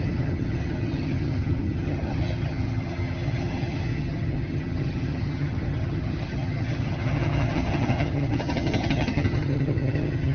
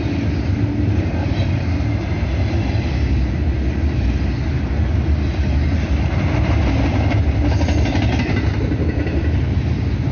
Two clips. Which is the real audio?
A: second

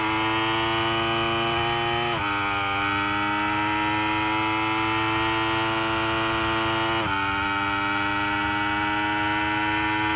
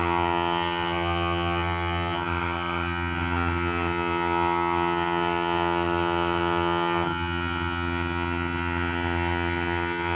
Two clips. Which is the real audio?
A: first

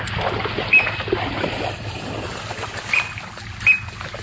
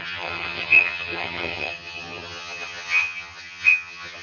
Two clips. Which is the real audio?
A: first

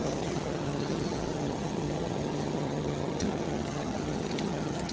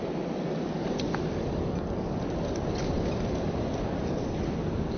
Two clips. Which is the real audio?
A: second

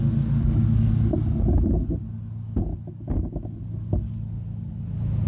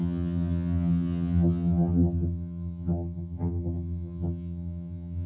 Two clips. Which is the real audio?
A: first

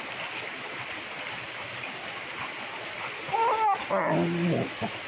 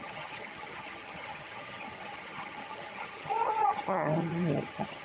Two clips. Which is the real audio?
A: first